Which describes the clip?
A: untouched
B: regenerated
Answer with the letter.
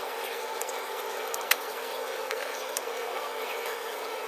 B